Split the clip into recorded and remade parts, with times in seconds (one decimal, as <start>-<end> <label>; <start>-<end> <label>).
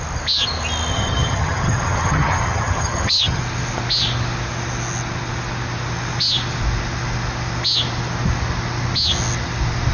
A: 0.0-0.9 recorded; 0.9-3.4 remade; 3.4-9.9 recorded